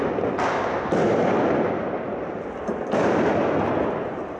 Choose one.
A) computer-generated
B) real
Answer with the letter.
B